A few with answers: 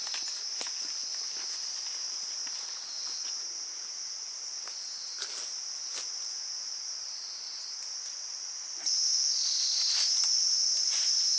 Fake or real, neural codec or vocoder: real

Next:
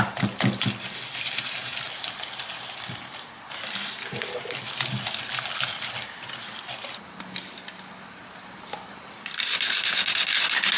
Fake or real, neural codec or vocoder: real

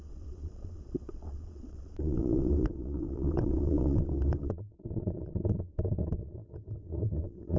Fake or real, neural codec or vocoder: fake, vocoder, WaveNeXt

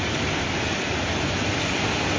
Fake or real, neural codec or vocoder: real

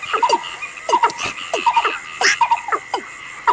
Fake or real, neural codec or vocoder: real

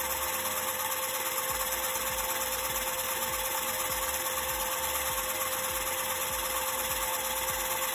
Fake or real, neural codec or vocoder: real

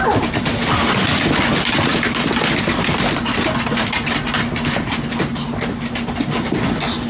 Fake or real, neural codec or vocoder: real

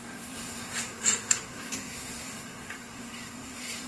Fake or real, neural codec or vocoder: fake, codec, SNAC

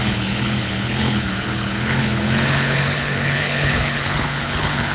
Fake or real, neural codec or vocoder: fake, codec, HILCodec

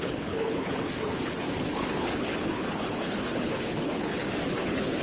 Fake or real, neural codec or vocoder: fake, codec, HILCodec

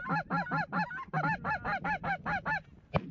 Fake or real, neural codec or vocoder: real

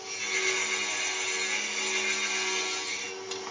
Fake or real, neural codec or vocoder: real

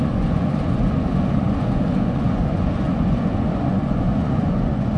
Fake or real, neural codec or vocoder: fake, vocoder, Vocos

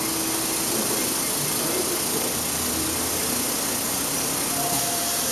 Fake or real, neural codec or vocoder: real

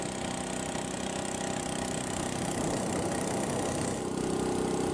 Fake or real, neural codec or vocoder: real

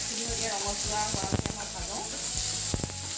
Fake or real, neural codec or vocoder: real